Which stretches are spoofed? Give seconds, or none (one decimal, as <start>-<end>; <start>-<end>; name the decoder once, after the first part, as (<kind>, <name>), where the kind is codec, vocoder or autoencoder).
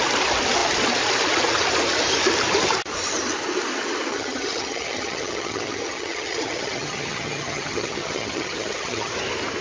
4.1-9.1 (vocoder, HiFi-GAN)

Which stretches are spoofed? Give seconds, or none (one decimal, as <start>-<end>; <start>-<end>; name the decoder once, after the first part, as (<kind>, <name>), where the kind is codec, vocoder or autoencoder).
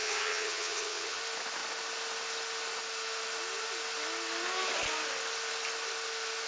0.0-1.2 (vocoder, HiFi-GAN)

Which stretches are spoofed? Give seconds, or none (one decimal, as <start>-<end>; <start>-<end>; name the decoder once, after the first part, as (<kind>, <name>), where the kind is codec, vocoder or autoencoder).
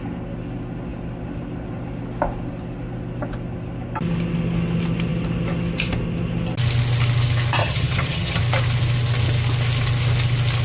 7.6-8.4 (vocoder, HiFi-GAN)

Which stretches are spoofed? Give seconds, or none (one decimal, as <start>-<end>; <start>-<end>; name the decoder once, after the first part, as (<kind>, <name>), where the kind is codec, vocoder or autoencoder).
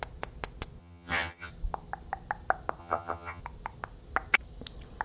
0.8-1.5 (vocoder, HiFi-GAN); 2.8-3.4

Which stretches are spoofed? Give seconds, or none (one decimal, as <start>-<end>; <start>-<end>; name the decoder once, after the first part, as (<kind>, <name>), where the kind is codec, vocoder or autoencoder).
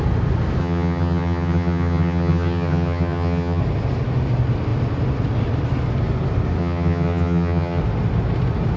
0.6-3.6 (vocoder, HiFi-GAN); 6.6-7.8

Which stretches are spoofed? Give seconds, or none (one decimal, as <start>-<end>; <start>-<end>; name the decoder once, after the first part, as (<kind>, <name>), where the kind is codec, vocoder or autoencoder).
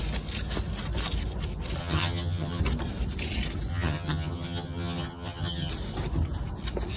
1.8-2.6 (vocoder, HiFi-GAN); 3.7-5.7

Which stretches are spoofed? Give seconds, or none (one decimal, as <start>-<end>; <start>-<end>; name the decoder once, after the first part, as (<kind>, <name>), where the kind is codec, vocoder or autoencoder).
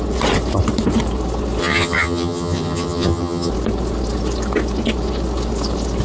1.6-3.5 (vocoder, HiFi-GAN)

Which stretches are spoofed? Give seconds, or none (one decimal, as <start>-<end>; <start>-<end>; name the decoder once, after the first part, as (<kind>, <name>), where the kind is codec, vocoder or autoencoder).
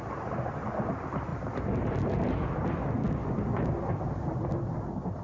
none